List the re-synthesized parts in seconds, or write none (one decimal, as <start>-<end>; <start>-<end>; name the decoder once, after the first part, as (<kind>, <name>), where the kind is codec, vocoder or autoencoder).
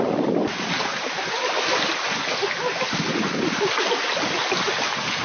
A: 0.9-1.4 (vocoder, BigVGAN v2)